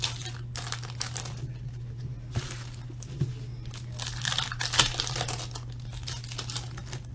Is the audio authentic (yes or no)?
yes